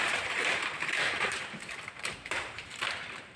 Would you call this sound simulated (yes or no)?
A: yes